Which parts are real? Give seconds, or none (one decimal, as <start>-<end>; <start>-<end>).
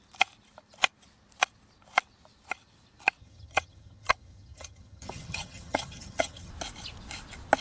0.0-3.2; 6.5-7.6